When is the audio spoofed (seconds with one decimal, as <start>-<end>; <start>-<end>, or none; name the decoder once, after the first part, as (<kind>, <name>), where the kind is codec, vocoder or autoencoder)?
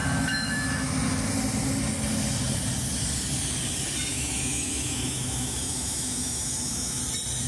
0.0-0.9 (autoencoder, DAC-VAE); 4.1-7.0